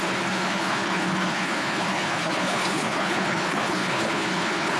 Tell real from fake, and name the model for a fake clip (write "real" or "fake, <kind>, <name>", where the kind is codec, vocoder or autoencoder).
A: fake, codec, HILCodec